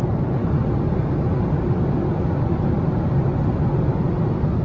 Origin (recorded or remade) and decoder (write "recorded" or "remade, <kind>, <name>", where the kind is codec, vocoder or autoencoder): recorded